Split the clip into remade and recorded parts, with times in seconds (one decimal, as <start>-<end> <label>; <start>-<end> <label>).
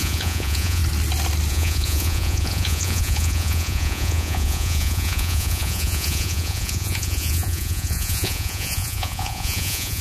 0.0-0.8 remade; 0.8-1.5 recorded; 1.5-10.0 remade